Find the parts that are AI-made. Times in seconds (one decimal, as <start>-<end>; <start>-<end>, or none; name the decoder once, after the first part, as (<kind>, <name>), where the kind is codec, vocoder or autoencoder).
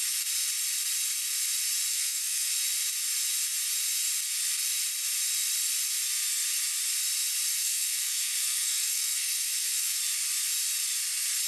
1.9-2.5 (codec, SNAC); 7.6-10.0